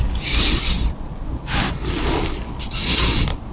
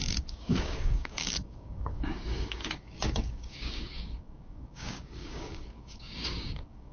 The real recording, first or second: first